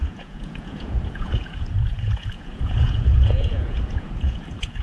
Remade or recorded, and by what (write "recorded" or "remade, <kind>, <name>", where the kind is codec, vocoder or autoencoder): remade, vocoder, Vocos